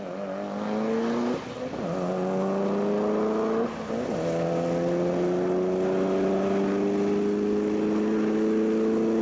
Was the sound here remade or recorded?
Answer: recorded